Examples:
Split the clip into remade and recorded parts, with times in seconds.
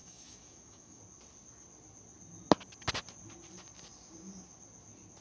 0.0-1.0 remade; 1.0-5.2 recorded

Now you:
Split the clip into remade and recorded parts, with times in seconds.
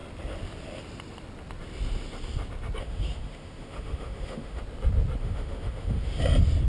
0.0-2.8 recorded; 2.8-4.6 remade; 4.6-5.2 recorded; 5.2-6.2 remade; 6.2-6.7 recorded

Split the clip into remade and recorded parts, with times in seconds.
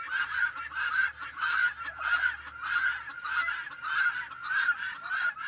0.0-5.5 recorded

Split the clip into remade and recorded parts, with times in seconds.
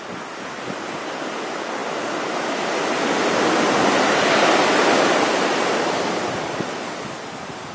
0.0-7.7 recorded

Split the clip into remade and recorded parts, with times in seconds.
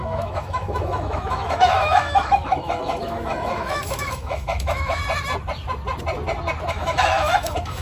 0.0-5.0 remade; 5.0-6.7 recorded; 6.7-7.8 remade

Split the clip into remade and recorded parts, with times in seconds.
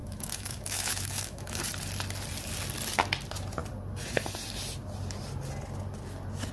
0.0-1.6 remade; 1.6-6.5 recorded